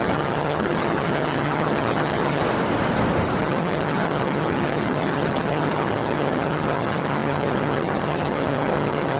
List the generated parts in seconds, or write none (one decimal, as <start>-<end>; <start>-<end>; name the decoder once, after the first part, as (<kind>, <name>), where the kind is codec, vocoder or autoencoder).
0.0-2.4 (vocoder, HiFi-GAN); 3.4-9.2